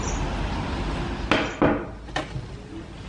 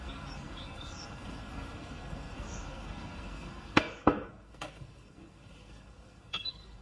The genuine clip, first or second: first